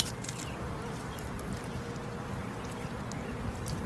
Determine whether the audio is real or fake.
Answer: real